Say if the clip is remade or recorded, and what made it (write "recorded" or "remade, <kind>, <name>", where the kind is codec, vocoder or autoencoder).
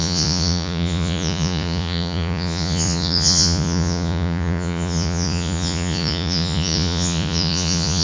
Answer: remade, vocoder, Vocos